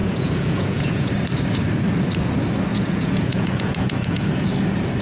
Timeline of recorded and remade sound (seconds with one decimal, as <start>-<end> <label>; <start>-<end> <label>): 0.0-1.1 remade; 1.1-2.7 recorded; 2.7-4.5 remade; 4.5-5.0 recorded